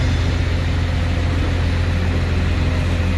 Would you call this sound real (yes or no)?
yes